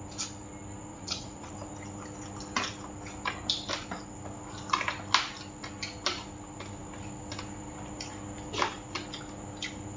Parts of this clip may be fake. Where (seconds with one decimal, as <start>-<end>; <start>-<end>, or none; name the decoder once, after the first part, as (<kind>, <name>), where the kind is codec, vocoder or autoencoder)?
0.9-1.5 (vocoder, Vocos)